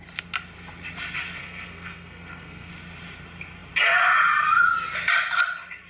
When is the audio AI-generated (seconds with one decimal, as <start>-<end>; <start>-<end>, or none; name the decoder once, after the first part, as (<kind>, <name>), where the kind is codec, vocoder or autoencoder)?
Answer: 1.4-2.7 (codec, SNAC)